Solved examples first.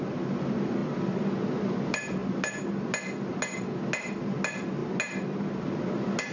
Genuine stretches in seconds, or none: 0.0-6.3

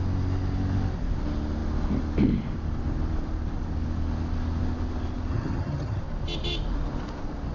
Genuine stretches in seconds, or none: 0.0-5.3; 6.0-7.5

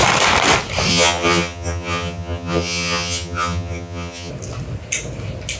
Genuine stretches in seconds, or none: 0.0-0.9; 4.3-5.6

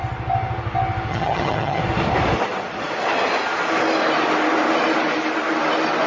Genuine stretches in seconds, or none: 0.0-1.1; 1.8-6.1

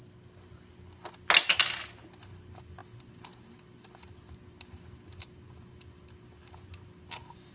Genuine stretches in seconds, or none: 0.0-7.5

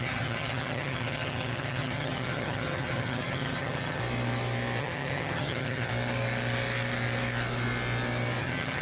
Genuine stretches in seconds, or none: 4.0-4.8; 5.9-8.4